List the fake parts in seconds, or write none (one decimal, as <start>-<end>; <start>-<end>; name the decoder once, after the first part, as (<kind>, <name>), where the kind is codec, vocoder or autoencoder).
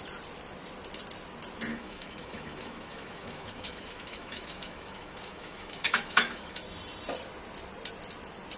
1.7-6.6 (autoencoder, DAC-VAE)